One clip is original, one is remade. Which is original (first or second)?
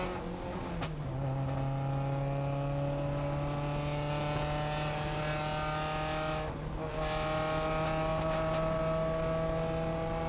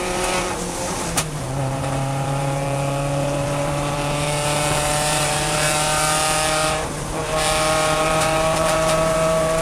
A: first